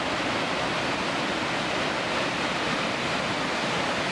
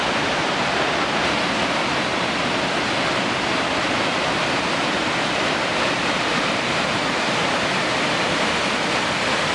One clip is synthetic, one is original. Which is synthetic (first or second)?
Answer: second